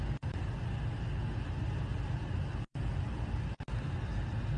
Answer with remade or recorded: recorded